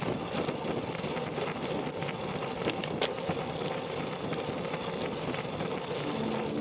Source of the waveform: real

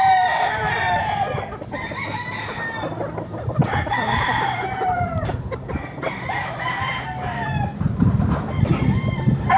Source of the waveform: fake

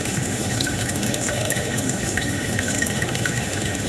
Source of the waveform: fake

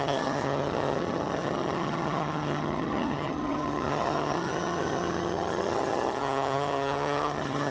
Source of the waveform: fake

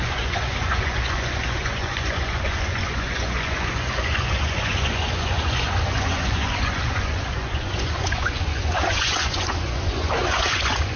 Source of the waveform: fake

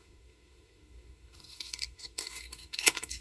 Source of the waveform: fake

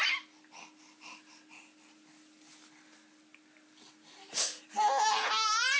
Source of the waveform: real